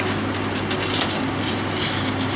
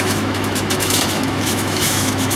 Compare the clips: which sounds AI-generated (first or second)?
second